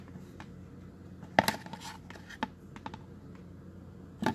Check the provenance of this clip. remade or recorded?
recorded